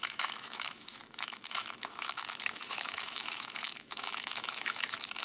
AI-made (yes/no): yes